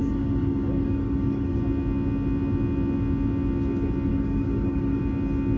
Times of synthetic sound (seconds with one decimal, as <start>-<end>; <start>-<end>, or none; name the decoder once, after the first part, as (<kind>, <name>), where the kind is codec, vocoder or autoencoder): 0.0-1.6 (codec, DAC); 4.1-5.0